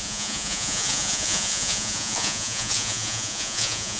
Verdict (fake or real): fake